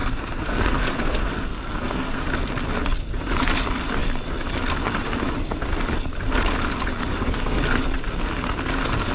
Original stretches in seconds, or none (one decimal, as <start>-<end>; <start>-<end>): 2.2-7.1; 7.6-9.1